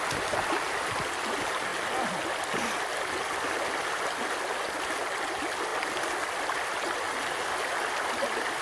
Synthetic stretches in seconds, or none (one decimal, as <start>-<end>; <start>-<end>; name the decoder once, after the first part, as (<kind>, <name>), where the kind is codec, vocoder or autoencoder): none